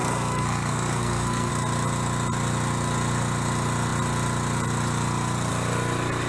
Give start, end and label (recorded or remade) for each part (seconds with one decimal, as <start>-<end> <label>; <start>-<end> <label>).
0.0-1.5 remade; 1.5-6.3 recorded